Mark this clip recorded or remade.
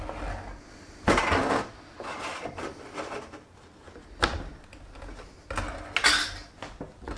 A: recorded